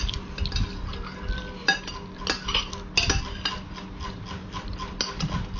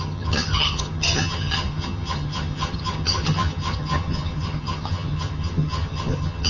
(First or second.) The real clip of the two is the first